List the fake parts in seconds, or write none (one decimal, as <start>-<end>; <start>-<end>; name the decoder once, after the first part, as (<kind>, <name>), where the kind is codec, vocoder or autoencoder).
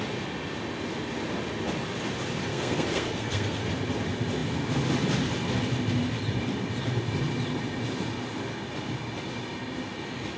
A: 2.5-3.7 (codec, SNAC)